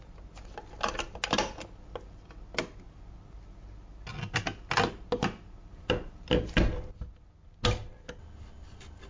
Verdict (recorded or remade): recorded